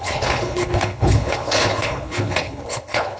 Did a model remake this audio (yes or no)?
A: yes